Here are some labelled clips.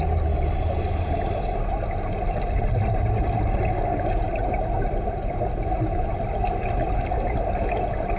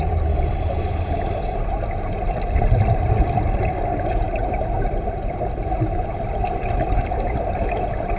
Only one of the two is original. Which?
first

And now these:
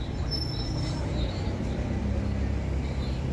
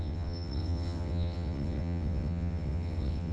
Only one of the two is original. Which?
first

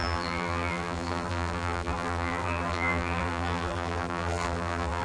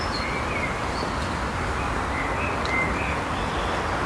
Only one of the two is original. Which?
second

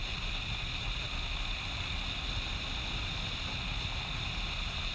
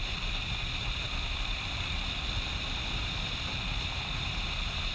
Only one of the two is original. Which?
first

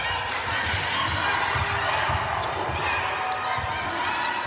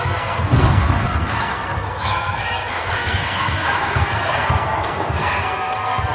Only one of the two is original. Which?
first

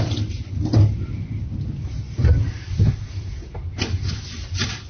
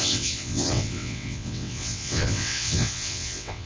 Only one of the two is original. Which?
first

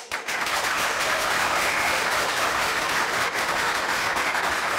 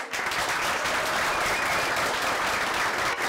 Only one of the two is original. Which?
second